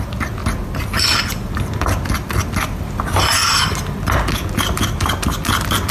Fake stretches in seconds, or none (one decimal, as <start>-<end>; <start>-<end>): none